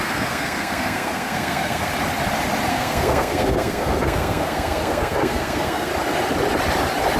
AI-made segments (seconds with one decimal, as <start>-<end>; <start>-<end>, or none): 0.0-1.9; 2.7-5.9